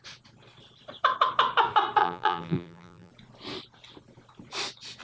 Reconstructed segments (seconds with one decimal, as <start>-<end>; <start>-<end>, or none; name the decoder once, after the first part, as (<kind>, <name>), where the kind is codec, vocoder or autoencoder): 2.0-3.1 (vocoder, BigVGAN v2)